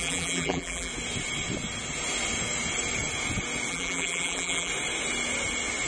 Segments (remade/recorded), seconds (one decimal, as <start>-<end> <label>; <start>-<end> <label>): 0.0-0.9 remade; 0.9-3.7 recorded; 3.7-4.7 remade; 4.7-5.9 recorded